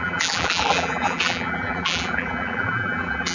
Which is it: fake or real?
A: fake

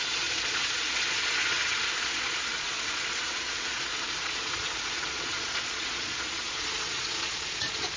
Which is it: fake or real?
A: fake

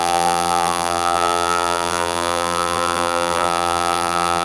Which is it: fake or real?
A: fake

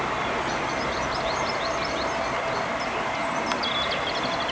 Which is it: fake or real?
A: real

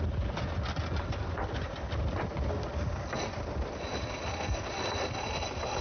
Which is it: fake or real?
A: real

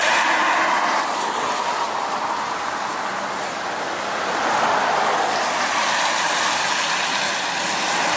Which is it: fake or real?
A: real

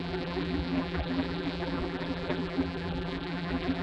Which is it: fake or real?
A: fake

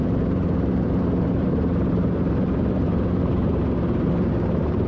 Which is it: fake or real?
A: fake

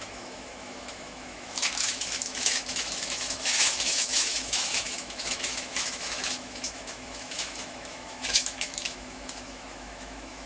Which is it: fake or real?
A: fake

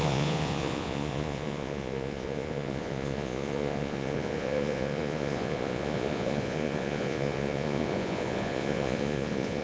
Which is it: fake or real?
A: fake